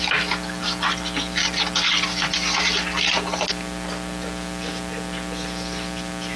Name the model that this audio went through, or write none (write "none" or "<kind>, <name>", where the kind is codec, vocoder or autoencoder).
none